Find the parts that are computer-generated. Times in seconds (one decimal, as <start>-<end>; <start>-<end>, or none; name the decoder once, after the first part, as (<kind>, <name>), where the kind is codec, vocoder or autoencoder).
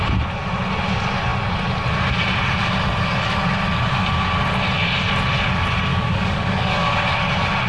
5.9-6.9 (codec, DAC)